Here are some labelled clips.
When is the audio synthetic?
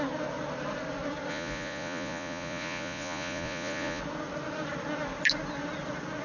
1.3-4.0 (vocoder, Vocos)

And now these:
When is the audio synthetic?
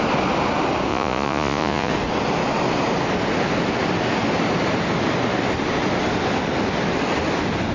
0.9-1.9 (vocoder, Vocos)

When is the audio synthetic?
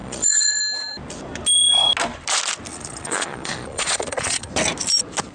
0.0-0.6 (vocoder, Vocos); 2.7-4.5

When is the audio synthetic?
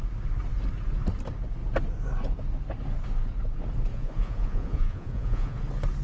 3.9-5.6 (vocoder, Vocos)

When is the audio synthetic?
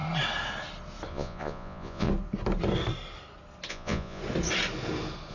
1.1-2.1 (vocoder, Vocos); 3.7-4.2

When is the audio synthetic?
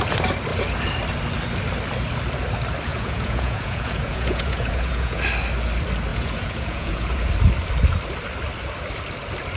2.9-5.2 (vocoder, Vocos); 6.1-7.3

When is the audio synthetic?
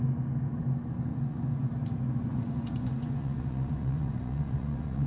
1.1-1.7 (vocoder, Vocos); 2.3-5.1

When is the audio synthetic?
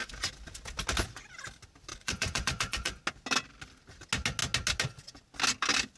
1.9-3.0 (vocoder, Vocos)